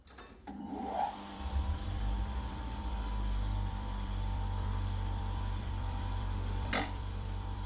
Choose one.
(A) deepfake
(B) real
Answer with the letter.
A